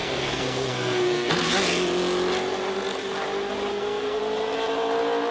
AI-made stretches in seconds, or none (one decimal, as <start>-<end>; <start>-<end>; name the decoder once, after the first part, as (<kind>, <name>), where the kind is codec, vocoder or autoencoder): 0.0-1.5 (codec, SNAC); 3.7-4.2